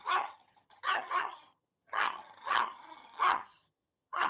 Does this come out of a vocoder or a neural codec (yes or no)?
yes